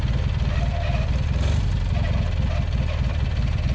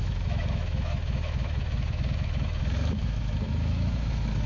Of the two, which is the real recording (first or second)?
first